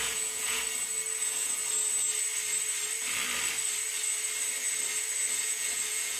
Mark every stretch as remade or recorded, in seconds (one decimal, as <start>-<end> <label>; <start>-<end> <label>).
0.0-0.6 remade; 0.6-1.2 recorded; 1.2-1.6 remade; 1.6-5.3 recorded; 5.3-6.2 remade